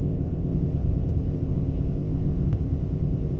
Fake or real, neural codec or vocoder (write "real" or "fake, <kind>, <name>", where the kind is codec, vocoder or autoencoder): fake, codec, ZipCodec